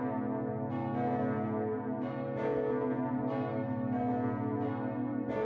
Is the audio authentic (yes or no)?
yes